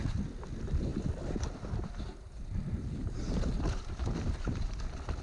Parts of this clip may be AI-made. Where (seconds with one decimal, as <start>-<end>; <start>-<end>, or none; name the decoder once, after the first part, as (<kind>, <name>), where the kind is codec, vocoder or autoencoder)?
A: none